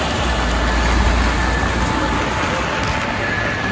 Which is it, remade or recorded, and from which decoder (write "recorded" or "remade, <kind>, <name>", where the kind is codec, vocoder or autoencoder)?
recorded